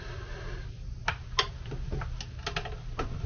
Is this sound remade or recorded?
recorded